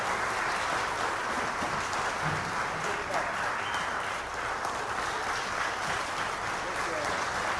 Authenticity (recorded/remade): recorded